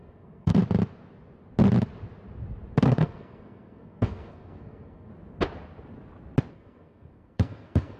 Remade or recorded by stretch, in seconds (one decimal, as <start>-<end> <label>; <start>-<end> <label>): 0.0-0.6 remade; 0.6-2.8 recorded; 2.8-5.1 remade; 5.1-6.5 recorded; 6.5-8.0 remade